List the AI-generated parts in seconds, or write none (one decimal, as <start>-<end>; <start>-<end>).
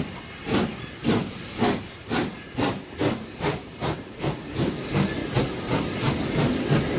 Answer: 0.0-5.2